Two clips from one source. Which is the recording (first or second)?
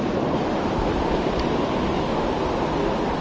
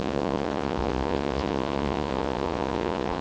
first